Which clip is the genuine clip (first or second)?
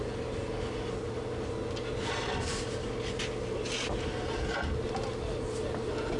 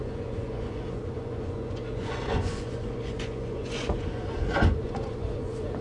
first